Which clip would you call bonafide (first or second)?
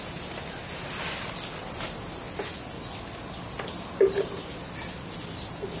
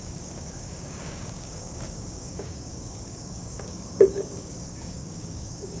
first